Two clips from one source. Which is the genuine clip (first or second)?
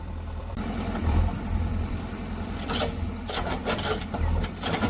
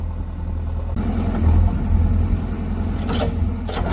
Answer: second